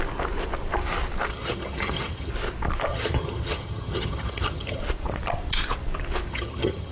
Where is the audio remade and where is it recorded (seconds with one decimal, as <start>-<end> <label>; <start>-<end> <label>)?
0.0-1.3 recorded; 1.3-2.3 remade; 2.3-2.9 recorded; 2.9-4.8 remade; 4.8-6.3 recorded; 6.3-6.9 remade